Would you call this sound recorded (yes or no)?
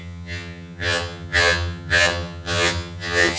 no